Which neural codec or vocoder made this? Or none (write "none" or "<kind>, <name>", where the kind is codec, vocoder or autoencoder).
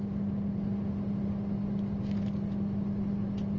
none